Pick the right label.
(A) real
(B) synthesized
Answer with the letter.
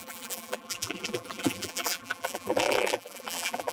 B